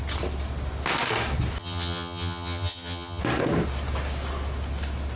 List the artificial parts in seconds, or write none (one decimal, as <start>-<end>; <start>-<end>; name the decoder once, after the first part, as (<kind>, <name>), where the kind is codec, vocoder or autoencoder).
1.6-3.2 (vocoder, HiFi-GAN)

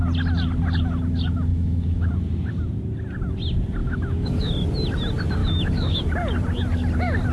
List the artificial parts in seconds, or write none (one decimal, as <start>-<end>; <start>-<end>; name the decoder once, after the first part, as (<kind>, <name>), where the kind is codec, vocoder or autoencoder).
1.5-2.1 (autoencoder, DAC-VAE); 3.8-4.5; 5.4-6.0

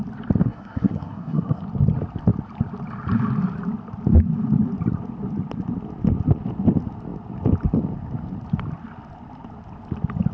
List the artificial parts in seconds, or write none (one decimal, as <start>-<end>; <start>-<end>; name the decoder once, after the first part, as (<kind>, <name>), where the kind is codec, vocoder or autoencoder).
0.4-1.6 (codec, SNAC)

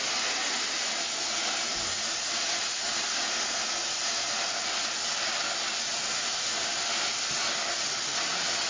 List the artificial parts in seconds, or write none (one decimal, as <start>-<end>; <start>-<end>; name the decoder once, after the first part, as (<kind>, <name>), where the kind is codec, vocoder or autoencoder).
none